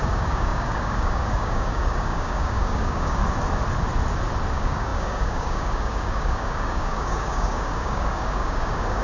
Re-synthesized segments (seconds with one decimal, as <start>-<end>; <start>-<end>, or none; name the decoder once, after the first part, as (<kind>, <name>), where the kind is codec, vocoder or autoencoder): 0.0-3.2 (codec, DAC); 4.5-9.0